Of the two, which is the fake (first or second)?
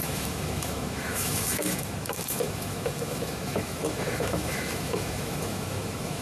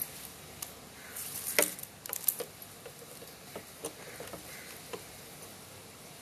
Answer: first